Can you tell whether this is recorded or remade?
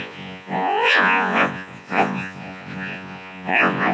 remade